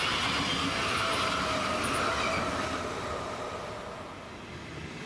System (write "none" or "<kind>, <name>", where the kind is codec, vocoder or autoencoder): none